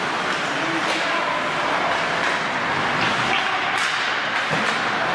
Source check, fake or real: real